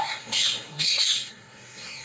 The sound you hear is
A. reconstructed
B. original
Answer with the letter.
A